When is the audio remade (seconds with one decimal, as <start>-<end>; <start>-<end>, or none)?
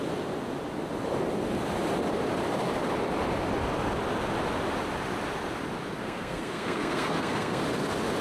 6.0-7.6